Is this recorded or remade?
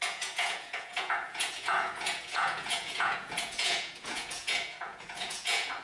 remade